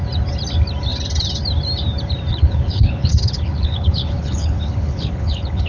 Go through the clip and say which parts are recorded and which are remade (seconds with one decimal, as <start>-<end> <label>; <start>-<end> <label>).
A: 0.0-2.3 recorded; 2.3-5.7 remade